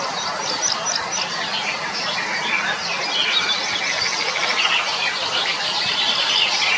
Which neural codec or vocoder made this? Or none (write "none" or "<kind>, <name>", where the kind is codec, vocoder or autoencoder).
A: none